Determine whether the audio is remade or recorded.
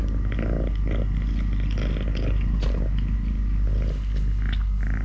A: recorded